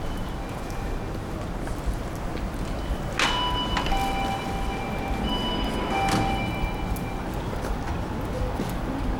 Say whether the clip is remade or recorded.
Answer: recorded